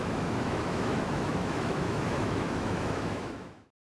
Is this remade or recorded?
remade